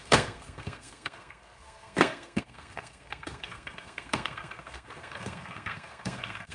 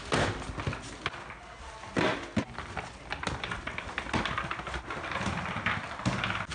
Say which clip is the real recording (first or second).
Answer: second